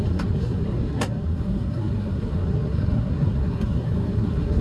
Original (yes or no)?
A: no